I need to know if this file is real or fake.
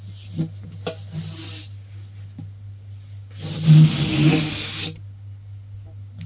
real